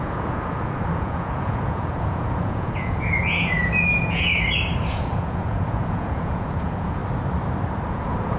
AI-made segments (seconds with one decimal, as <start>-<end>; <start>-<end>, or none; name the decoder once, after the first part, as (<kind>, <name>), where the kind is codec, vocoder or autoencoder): 0.0-4.3 (vocoder, Vocos); 4.9-7.0; 7.9-8.4